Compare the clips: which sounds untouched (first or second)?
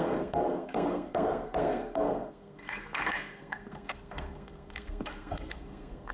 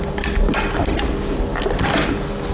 second